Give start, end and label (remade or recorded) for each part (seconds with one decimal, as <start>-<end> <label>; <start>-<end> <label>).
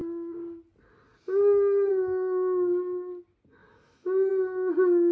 0.0-3.6 recorded; 3.6-4.3 remade; 4.3-5.1 recorded